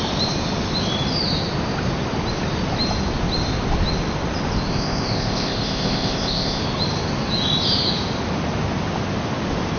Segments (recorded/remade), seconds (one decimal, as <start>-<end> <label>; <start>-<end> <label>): 0.0-4.7 recorded; 4.7-6.6 remade; 6.6-9.8 recorded

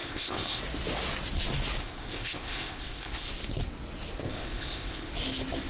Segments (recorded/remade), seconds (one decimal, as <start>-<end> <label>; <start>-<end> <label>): 0.0-0.6 remade; 0.6-1.8 recorded; 1.8-3.3 remade; 3.3-4.2 recorded; 4.2-5.1 remade; 5.1-5.7 recorded

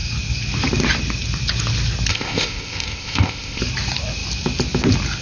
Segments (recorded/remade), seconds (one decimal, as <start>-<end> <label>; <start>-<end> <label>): 0.0-2.1 recorded; 2.1-3.6 remade; 3.6-5.2 recorded

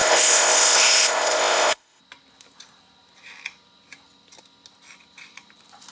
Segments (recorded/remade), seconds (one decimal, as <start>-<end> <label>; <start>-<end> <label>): 0.0-2.0 remade; 2.0-5.9 recorded

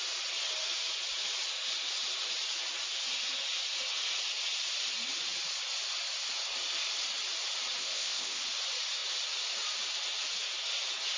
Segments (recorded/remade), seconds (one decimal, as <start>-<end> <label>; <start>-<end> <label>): 0.0-7.8 recorded; 7.8-8.4 remade; 8.4-11.2 recorded